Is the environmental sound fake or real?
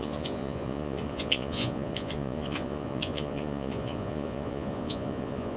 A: fake